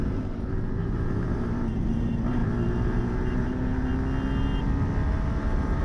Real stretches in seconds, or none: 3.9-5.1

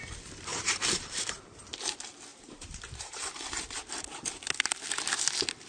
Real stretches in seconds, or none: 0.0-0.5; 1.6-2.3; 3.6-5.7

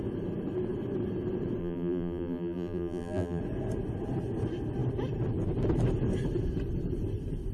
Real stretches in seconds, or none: 0.0-1.6; 3.4-7.5